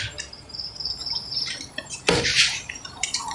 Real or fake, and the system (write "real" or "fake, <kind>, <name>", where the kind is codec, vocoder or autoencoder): fake, vocoder, BigVGAN v2